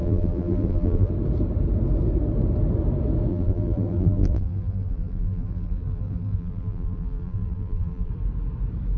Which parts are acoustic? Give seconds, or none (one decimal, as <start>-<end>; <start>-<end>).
1.1-3.3; 8.1-9.0